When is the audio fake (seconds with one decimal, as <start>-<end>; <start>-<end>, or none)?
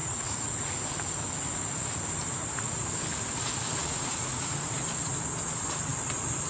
0.0-0.7; 3.8-4.7